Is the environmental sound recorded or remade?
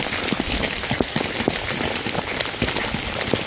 recorded